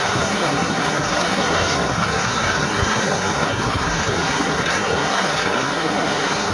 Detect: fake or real fake